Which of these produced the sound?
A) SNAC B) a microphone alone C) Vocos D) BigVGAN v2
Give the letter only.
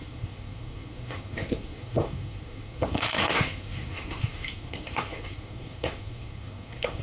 A